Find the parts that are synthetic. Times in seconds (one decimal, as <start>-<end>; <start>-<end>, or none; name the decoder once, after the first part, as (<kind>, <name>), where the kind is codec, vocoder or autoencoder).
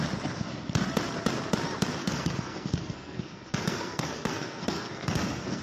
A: 2.0-5.6 (codec, SNAC)